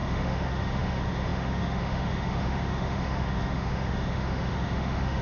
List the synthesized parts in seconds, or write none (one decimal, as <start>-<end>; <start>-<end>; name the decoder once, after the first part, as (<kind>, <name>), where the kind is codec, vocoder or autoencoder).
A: 0.0-5.2 (autoencoder, DAC-VAE)